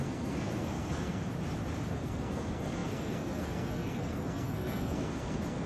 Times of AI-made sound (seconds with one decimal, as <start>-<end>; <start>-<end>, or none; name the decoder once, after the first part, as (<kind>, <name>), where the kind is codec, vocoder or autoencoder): 0.0-1.2 (codec, SNAC); 1.9-5.7

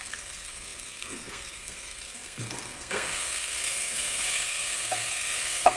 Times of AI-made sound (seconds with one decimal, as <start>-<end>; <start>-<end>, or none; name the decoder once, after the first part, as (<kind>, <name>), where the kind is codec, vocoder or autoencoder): 0.0-5.8 (codec, SNAC)

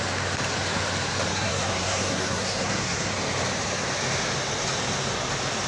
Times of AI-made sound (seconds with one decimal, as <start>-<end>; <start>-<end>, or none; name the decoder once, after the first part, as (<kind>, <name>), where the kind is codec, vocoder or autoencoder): 1.3-3.1 (codec, SNAC)

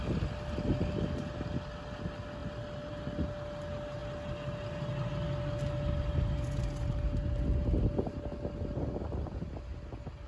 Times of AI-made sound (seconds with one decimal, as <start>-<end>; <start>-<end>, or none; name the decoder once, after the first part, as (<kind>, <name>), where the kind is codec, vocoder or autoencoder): none

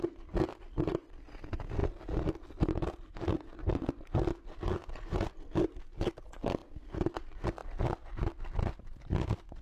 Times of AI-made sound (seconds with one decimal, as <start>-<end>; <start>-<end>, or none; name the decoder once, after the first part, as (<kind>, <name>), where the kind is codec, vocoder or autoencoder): none

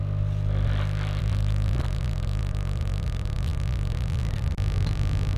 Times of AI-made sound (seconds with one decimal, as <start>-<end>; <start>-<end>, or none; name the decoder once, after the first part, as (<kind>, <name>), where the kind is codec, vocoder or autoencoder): none

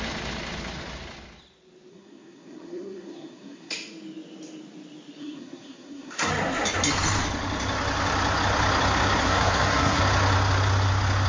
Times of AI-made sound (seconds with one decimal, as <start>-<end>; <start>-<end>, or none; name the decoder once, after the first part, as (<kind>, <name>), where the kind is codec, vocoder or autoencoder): 1.9-3.7 (codec, SNAC); 5.2-6.3; 9.2-10.0

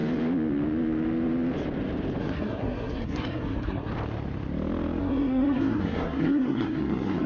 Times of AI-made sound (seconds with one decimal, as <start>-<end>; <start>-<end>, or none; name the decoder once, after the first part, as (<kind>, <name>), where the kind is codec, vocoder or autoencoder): 2.2-3.9 (codec, SNAC); 5.0-7.3